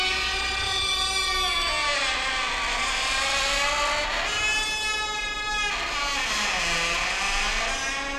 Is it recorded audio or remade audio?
recorded